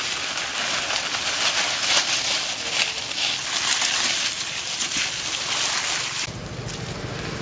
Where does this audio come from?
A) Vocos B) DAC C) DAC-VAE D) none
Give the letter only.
D